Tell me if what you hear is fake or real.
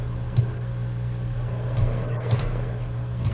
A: fake